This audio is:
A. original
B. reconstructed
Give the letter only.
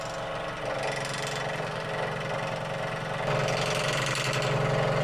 A